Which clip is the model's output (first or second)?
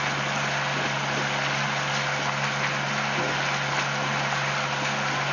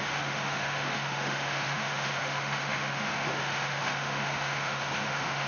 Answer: second